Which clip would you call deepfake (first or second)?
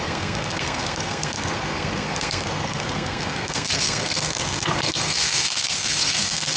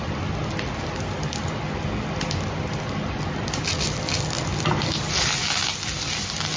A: first